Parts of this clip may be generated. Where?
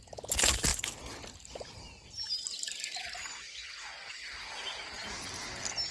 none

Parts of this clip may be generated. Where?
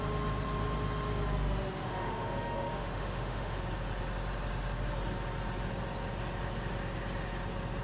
1.8-3.6 (autoencoder, DAC-VAE)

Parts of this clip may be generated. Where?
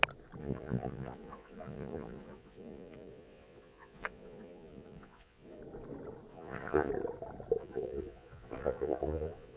0.4-5.6 (vocoder, Vocos); 6.3-6.9; 7.6-9.6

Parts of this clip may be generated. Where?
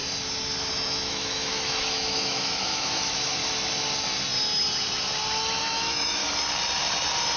0.7-3.4 (autoencoder, DAC-VAE); 5.6-6.2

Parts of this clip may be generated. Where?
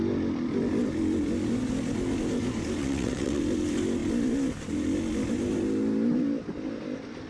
2.8-3.4 (vocoder, WaveNeXt)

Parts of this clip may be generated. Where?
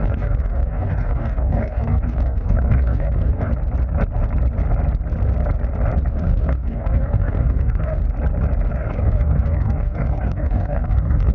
0.0-3.5 (codec, DAC); 6.1-8.0; 8.7-11.3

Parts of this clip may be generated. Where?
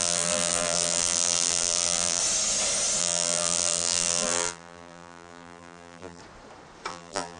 0.0-2.2 (vocoder, BigVGAN v2); 3.0-6.2; 6.9-7.4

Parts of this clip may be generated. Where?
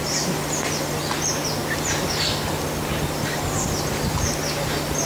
none